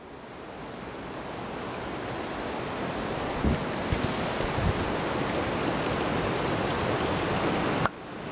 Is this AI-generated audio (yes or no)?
no